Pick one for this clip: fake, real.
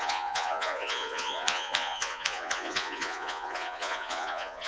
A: fake